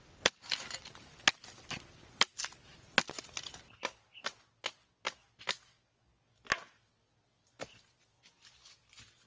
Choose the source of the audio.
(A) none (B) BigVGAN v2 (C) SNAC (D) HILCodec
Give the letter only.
A